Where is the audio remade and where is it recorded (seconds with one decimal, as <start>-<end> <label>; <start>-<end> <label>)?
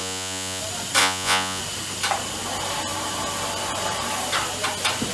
0.0-0.6 remade; 0.6-1.0 recorded; 1.0-1.6 remade; 1.6-5.1 recorded